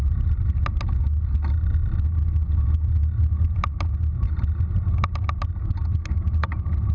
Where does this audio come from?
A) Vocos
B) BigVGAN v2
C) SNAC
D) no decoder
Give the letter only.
D